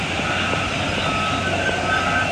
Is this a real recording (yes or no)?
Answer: yes